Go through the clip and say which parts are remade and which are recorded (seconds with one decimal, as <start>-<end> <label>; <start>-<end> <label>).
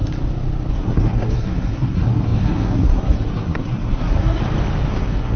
0.0-0.7 recorded; 0.7-4.4 remade; 4.4-4.9 recorded; 4.9-5.4 remade